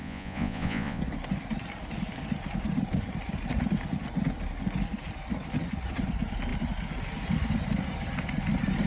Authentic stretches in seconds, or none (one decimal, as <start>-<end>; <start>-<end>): 1.0-8.9